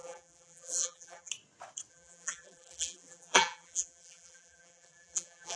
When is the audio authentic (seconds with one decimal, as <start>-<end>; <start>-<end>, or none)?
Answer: 1.3-1.9